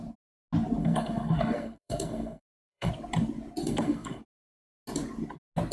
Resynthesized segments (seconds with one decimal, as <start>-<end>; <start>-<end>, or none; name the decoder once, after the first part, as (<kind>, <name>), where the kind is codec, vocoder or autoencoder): 0.8-2.9 (codec, SNAC); 3.6-4.2